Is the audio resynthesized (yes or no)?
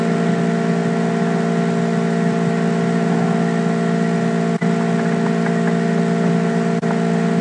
no